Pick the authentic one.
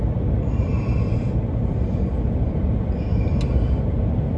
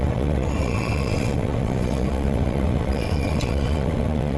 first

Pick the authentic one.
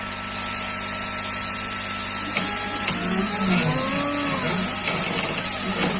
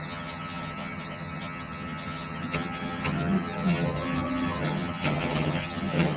first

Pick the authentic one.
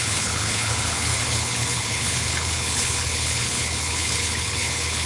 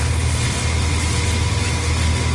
second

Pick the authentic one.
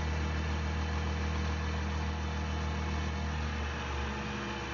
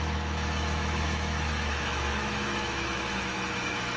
first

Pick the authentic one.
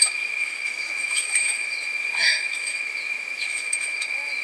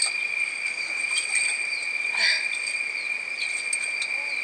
second